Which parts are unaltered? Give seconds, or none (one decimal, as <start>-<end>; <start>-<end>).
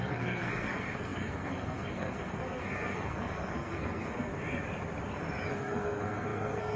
4.3-5.5